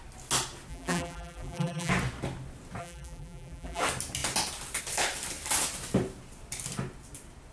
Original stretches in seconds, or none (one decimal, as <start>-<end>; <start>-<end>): 0.0-0.7; 1.9-2.8; 3.8-7.5